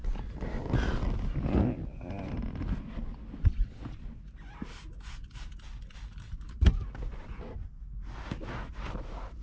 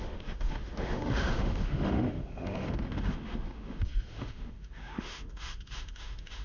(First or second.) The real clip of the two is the first